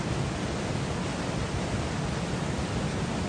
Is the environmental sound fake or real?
real